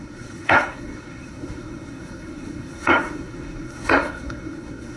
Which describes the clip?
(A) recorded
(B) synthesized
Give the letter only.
B